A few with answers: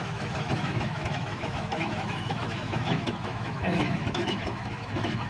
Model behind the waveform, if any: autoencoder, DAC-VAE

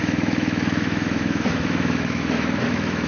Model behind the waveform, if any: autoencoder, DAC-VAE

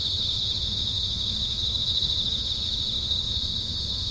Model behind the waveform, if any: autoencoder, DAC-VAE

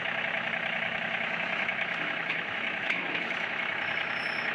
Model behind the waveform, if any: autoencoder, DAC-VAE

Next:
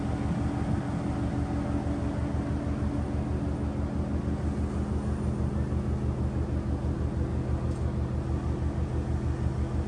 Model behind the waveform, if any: none